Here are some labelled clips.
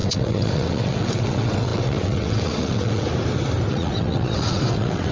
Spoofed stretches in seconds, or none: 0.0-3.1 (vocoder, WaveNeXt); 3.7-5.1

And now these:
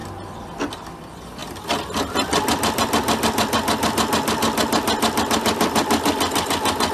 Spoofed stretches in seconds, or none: none

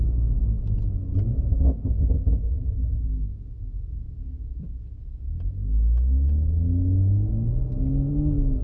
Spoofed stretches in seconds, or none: 4.0-4.8 (vocoder, Vocos)

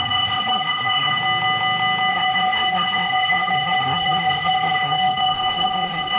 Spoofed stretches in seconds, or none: 0.0-1.2 (codec, SNAC); 2.1-6.2

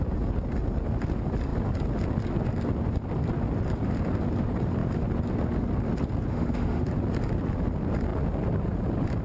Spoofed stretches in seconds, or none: 6.3-6.8 (autoencoder, DAC-VAE)

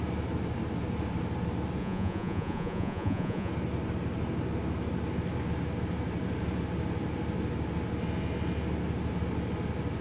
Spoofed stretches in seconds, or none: 1.8-3.5 (vocoder, Vocos)

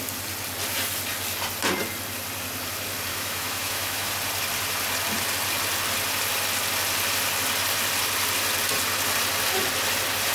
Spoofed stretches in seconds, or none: 3.1-4.1 (autoencoder, DAC-VAE)

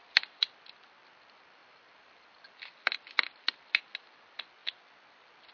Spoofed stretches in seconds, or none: 0.0-0.5 (vocoder, BigVGAN v2); 4.6-5.5